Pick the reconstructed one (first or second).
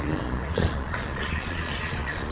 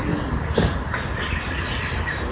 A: first